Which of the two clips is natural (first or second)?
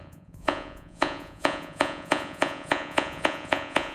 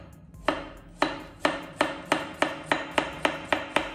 second